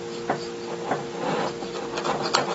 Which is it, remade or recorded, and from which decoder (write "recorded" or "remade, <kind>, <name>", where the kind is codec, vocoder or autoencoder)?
recorded